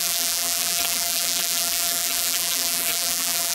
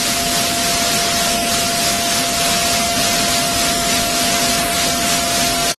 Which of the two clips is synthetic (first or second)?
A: first